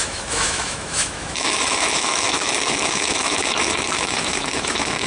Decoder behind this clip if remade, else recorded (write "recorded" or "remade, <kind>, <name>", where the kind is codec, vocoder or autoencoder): remade, autoencoder, DAC-VAE